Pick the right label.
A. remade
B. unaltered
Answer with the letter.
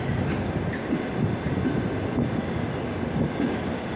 B